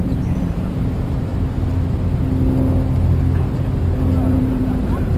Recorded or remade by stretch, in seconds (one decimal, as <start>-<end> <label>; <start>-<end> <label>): 0.0-1.3 remade; 1.3-4.3 recorded; 4.3-5.2 remade